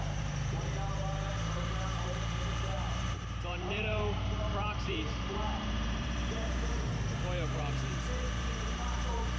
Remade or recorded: remade